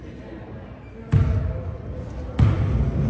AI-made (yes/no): no